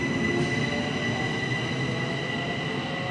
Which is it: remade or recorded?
recorded